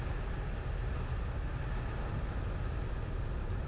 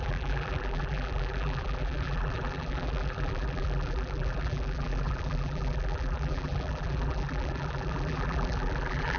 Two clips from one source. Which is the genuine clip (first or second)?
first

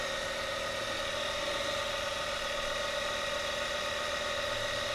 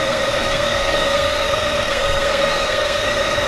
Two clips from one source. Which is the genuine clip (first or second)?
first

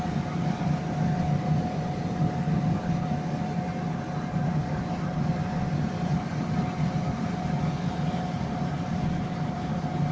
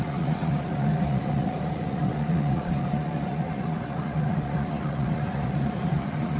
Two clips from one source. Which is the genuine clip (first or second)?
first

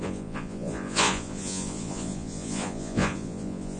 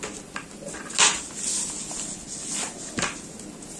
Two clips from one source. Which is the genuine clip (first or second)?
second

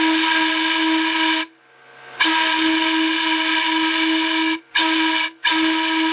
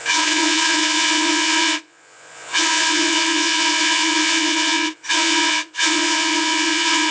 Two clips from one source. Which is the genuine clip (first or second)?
first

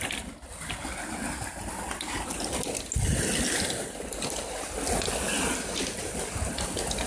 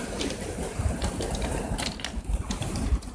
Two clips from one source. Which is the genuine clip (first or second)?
first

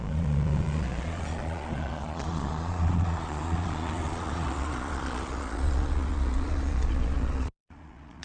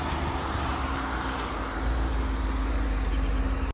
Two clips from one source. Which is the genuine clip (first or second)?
second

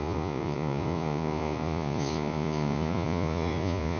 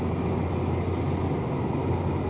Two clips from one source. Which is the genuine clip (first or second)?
second